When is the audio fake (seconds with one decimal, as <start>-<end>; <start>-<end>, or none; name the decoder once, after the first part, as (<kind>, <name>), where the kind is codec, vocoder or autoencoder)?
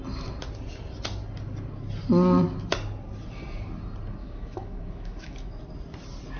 4.2-5.6 (autoencoder, DAC-VAE)